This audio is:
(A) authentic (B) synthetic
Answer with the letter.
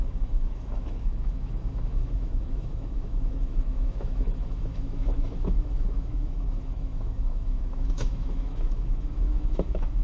B